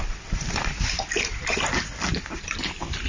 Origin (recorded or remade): recorded